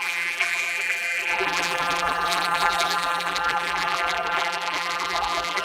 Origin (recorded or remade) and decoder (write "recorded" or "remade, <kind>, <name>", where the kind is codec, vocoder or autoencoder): remade, vocoder, BigVGAN v2